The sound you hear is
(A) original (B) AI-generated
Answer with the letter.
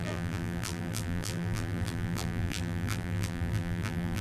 B